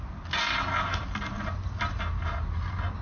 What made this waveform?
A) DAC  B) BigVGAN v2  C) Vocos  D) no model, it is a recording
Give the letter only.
D